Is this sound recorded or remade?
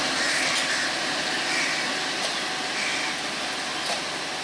recorded